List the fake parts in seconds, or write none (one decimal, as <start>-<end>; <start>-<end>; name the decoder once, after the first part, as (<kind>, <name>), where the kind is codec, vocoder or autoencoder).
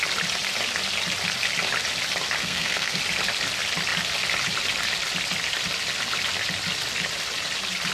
2.4-3.0 (codec, SNAC)